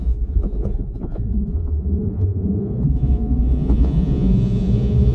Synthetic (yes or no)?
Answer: yes